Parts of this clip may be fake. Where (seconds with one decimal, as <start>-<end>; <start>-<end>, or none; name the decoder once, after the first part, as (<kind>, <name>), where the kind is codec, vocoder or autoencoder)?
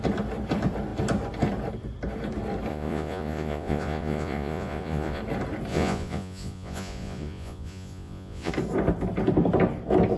2.7-5.2 (vocoder, Vocos); 5.7-8.5